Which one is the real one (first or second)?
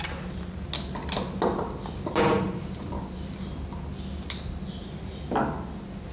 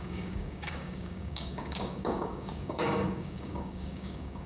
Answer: first